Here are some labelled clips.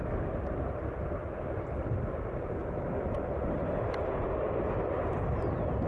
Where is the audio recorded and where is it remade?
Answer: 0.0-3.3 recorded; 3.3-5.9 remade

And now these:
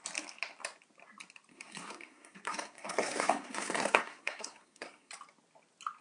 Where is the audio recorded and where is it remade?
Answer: 0.0-1.5 recorded; 1.5-5.1 remade; 5.1-6.0 recorded

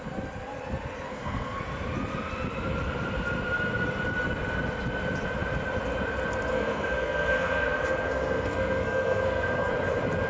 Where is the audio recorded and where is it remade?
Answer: 0.0-1.1 recorded; 1.1-1.6 remade; 1.6-6.5 recorded; 6.5-9.7 remade; 9.7-10.3 recorded